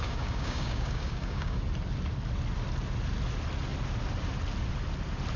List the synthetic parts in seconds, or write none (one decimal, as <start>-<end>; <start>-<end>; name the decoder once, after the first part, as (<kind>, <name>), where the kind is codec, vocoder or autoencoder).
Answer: 0.0-1.6 (codec, DAC)